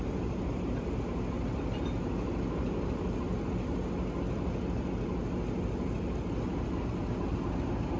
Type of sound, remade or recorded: recorded